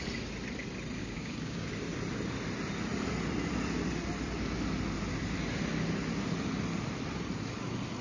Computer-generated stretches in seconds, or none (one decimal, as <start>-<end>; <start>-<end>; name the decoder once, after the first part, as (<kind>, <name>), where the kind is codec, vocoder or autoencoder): 1.0-1.7 (codec, DAC)